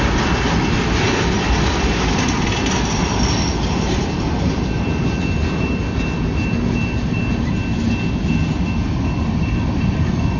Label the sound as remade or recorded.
recorded